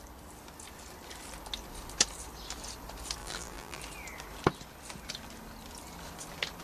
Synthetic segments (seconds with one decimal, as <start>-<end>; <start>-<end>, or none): 3.2-3.8